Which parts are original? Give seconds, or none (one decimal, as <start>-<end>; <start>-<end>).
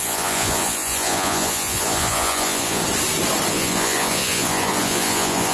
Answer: 2.8-3.5